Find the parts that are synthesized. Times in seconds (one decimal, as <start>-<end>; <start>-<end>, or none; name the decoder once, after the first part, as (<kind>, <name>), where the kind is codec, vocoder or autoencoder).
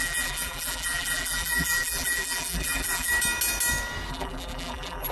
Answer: 0.0-3.1 (vocoder, BigVGAN v2); 4.1-5.1